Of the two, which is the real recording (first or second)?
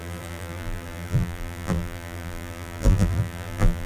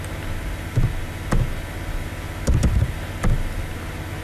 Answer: second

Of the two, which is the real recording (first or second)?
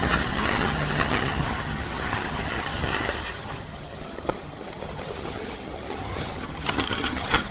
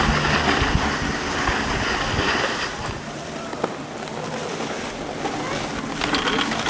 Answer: second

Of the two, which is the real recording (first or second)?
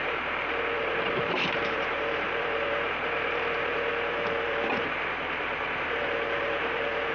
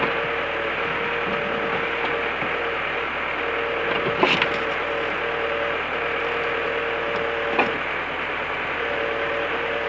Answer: second